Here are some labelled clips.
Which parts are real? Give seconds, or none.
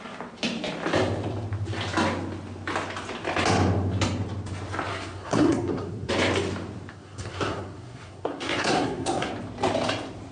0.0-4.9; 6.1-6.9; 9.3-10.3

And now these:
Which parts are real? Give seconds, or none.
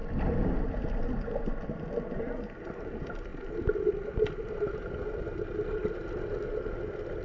0.0-7.2